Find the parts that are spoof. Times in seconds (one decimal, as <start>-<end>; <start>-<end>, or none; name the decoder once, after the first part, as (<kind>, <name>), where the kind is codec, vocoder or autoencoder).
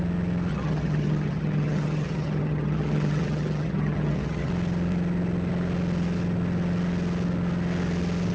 0.5-4.5 (vocoder, HiFi-GAN)